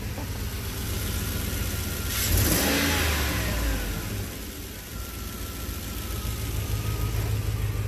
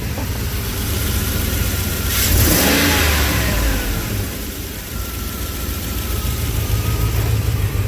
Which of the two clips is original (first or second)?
first